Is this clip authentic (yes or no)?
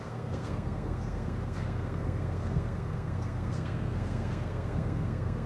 no